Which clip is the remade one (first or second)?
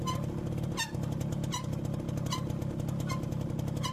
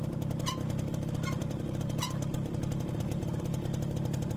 second